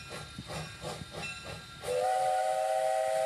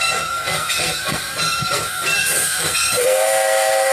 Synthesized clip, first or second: second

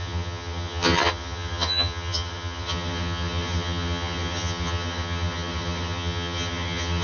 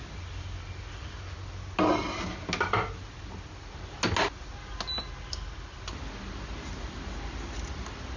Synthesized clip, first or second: first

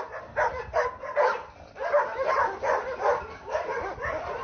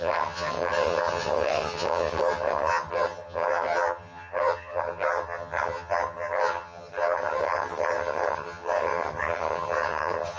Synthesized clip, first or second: second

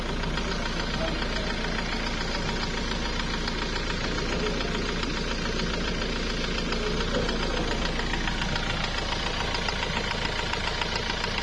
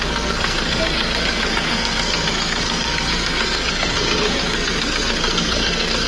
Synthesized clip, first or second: second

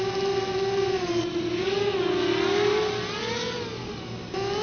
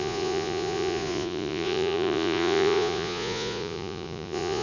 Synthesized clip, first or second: second